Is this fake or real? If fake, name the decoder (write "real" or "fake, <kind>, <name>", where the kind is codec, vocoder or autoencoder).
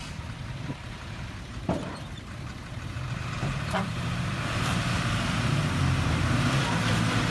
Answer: fake, vocoder, BigVGAN v2